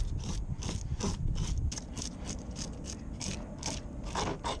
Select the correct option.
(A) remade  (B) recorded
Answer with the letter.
B